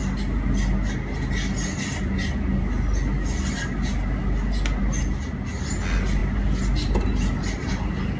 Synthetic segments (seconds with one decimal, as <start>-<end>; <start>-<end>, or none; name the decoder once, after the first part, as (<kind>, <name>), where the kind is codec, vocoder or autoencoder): none